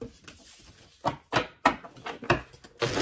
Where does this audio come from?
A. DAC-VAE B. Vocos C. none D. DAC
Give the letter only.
C